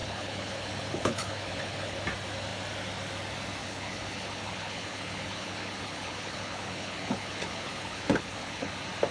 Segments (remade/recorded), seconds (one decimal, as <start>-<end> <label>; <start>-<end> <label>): 0.0-2.0 remade; 2.0-3.6 recorded; 3.6-8.7 remade; 8.7-9.1 recorded